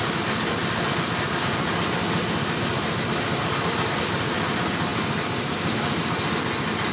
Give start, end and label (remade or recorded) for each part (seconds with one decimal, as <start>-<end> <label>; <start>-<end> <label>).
0.0-6.9 recorded